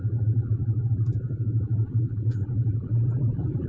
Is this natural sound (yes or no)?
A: no